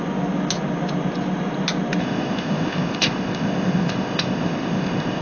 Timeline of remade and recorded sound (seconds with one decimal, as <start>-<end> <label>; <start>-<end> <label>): 0.0-2.0 recorded; 2.0-5.2 remade